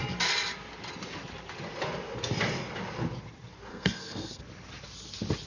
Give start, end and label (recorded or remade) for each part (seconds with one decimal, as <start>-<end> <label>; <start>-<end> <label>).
0.0-3.7 recorded; 3.7-4.4 remade; 4.4-5.5 recorded